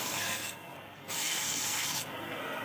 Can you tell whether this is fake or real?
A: fake